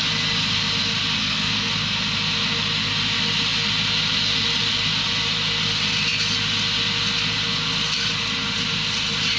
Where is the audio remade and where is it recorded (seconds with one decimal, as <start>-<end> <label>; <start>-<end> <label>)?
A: 0.0-1.2 recorded; 1.2-1.7 remade; 1.7-9.4 recorded

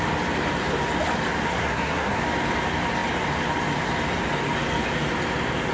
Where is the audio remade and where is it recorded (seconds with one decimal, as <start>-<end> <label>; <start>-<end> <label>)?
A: 0.0-1.5 recorded; 1.5-2.2 remade; 2.2-5.7 recorded

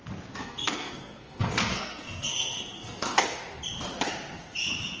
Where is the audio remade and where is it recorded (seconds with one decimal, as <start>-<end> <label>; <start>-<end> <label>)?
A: 0.0-0.4 recorded; 0.4-3.4 remade; 3.4-5.0 recorded

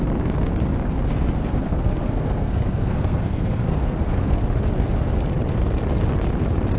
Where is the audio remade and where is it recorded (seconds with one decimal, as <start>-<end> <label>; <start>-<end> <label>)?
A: 0.0-1.4 recorded; 1.4-4.4 remade; 4.4-6.8 recorded

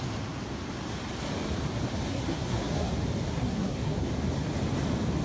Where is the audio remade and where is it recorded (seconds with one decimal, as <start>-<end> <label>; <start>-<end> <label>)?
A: 0.0-2.1 recorded; 2.1-2.9 remade; 2.9-3.3 recorded; 3.3-4.1 remade; 4.1-5.2 recorded

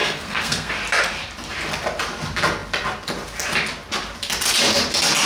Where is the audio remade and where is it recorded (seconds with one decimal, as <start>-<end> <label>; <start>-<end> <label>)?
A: 0.0-0.7 remade; 0.7-5.3 recorded

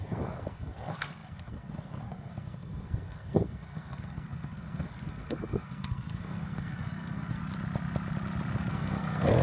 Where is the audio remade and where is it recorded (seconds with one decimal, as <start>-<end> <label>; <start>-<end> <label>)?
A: 0.0-7.4 remade; 7.4-8.7 recorded; 8.7-9.4 remade

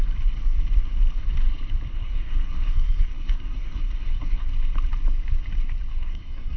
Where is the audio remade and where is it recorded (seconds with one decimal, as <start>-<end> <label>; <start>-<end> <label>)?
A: 0.0-1.9 recorded; 1.9-4.5 remade; 4.5-5.9 recorded; 5.9-6.6 remade